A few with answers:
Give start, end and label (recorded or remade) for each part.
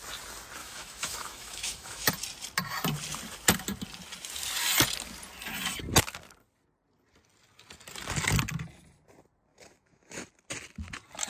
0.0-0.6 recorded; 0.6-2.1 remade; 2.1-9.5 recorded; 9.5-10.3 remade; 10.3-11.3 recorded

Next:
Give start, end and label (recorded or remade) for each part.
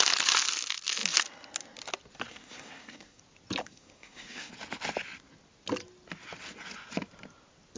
0.0-2.3 recorded; 2.3-3.2 remade; 3.2-3.6 recorded; 3.6-4.5 remade; 4.5-7.8 recorded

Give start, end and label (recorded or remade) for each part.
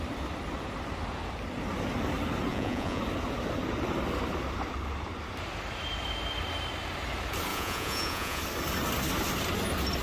0.0-2.5 recorded; 2.5-3.0 remade; 3.0-7.5 recorded; 7.5-8.4 remade; 8.4-10.0 recorded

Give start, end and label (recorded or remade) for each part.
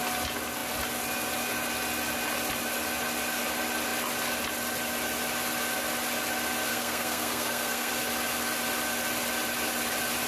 0.0-6.7 recorded; 6.7-7.9 remade; 7.9-10.3 recorded